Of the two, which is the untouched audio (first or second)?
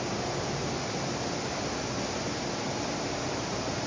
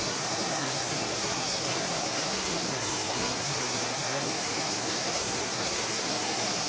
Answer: first